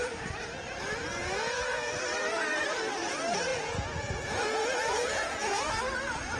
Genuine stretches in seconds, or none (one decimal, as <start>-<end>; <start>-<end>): 0.0-1.2; 2.0-3.5; 5.8-6.4